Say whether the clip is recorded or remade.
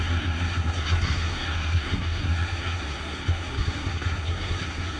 remade